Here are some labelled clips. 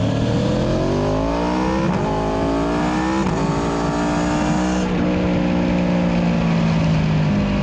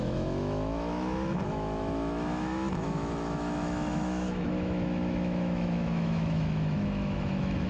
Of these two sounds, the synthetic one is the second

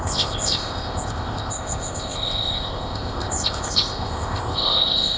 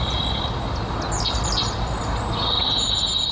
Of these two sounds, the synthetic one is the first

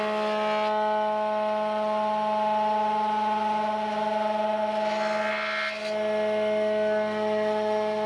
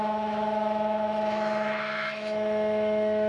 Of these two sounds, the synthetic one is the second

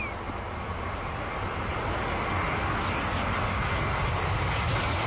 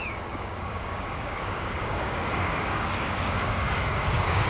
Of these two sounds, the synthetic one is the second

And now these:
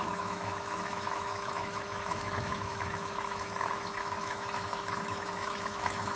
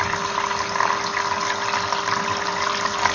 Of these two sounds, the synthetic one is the first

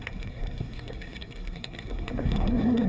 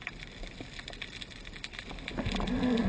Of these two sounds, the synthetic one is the first